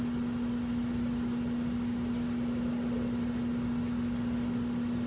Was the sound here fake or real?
real